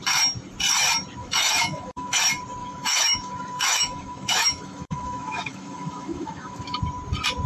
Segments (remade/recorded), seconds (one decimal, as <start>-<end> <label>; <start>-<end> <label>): 0.0-1.2 recorded; 1.2-2.2 remade; 2.2-2.6 recorded; 2.6-6.8 remade; 6.8-7.5 recorded